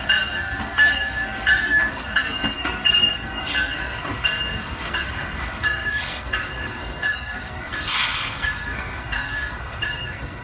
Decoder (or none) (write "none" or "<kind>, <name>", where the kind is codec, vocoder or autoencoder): codec, SNAC